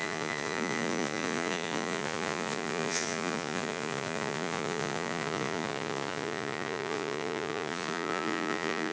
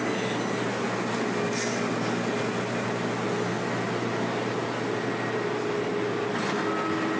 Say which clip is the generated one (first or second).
first